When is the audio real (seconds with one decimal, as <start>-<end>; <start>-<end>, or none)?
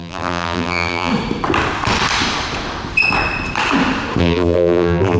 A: 1.1-4.2